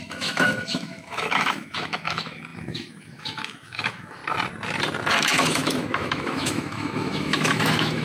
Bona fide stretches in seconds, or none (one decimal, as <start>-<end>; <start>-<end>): 4.2-5.1